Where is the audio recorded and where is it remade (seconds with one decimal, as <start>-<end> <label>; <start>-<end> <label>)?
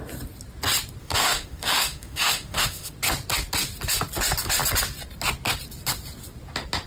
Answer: 0.0-1.0 recorded; 1.0-2.9 remade; 2.9-6.9 recorded